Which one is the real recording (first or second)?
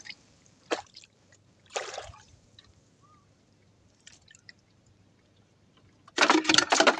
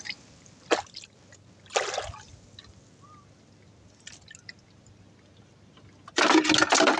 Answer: second